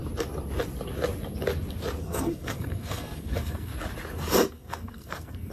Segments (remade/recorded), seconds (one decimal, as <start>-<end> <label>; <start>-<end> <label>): 0.0-2.0 recorded; 2.0-3.7 remade; 3.7-4.5 recorded; 4.5-5.5 remade